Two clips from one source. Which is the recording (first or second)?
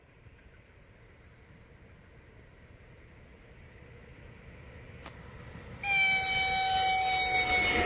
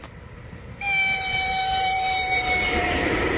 first